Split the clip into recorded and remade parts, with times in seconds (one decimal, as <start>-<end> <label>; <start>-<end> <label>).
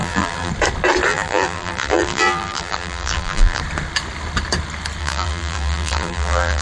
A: 0.0-0.5 remade; 0.5-1.1 recorded; 1.1-3.6 remade; 3.6-5.0 recorded; 5.0-6.6 remade